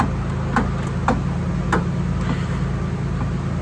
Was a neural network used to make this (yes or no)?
no